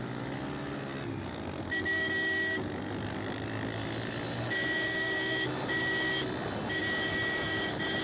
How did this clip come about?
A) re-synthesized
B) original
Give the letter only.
B